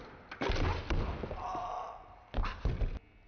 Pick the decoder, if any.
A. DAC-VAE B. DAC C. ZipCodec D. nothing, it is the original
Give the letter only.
D